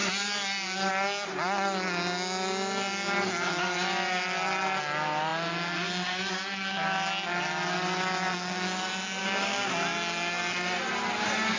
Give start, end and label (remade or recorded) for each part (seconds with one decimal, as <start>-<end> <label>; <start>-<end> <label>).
0.0-9.2 recorded; 9.2-9.7 remade; 9.7-11.6 recorded